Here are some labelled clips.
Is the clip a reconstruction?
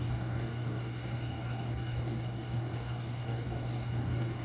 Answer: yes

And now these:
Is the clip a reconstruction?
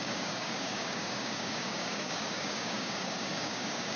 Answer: yes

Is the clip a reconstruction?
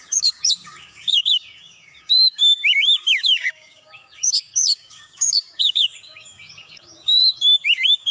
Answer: yes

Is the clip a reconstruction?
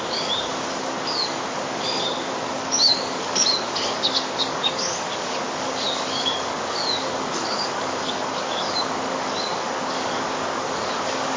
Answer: yes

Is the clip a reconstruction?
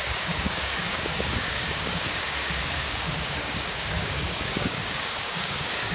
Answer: yes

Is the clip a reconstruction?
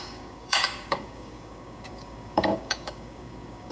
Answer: yes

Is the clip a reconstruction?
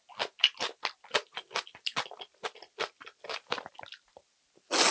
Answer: no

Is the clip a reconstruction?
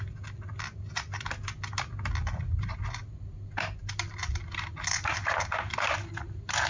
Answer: no